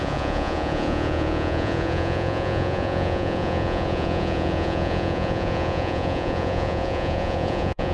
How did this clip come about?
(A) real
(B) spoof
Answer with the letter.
B